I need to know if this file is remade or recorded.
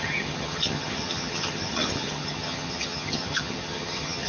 remade